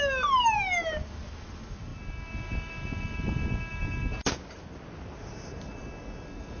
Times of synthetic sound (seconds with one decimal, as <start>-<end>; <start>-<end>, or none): none